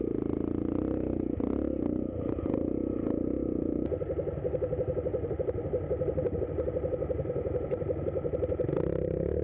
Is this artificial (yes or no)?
no